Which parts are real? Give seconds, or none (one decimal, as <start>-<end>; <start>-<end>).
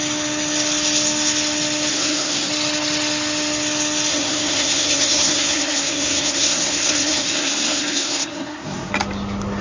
0.0-1.9; 2.5-4.1; 8.9-9.6